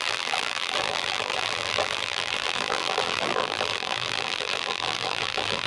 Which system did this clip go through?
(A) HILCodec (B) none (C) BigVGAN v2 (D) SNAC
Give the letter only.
C